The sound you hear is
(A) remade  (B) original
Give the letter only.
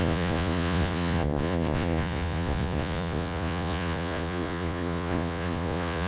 A